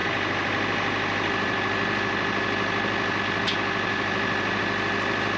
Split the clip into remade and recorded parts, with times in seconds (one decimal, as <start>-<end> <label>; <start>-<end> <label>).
0.0-3.2 recorded; 3.2-5.4 remade